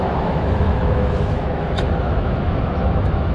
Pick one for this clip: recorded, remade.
remade